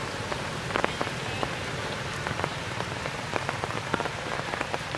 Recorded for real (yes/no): no